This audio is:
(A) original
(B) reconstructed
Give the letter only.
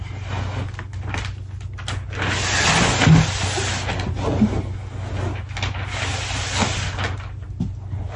A